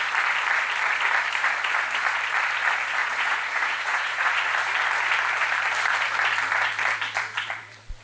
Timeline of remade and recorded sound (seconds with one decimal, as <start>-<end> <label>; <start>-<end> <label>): 0.0-3.0 recorded; 3.0-4.3 remade; 4.3-8.0 recorded